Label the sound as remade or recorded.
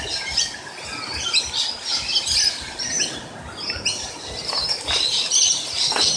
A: recorded